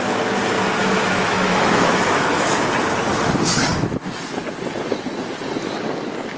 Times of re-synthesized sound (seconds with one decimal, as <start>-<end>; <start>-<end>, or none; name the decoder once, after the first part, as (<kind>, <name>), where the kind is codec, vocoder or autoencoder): 0.8-2.7 (autoencoder, DAC-VAE)